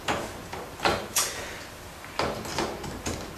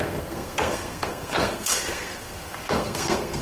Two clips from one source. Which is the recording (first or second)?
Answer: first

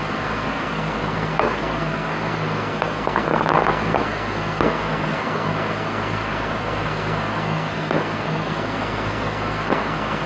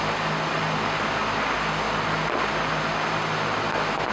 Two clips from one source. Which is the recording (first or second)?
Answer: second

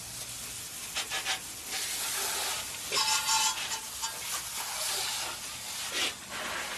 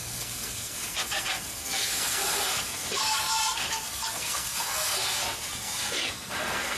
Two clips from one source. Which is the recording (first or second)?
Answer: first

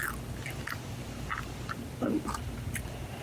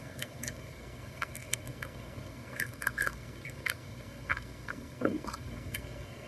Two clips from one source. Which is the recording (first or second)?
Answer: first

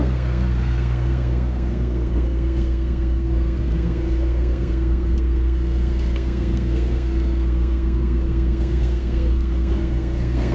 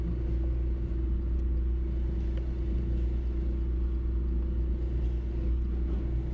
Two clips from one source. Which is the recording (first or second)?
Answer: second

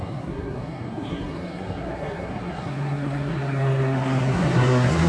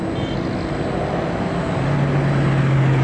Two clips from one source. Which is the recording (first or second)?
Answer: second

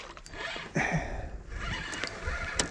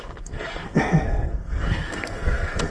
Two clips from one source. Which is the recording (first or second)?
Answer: first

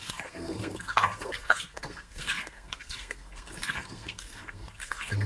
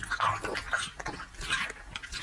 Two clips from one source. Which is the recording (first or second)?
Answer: second